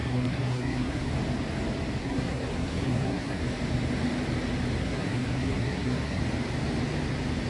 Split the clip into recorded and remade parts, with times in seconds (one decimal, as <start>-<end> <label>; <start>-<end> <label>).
0.0-1.1 remade; 1.1-2.0 recorded; 2.0-3.4 remade; 3.4-4.8 recorded; 4.8-6.2 remade; 6.2-7.5 recorded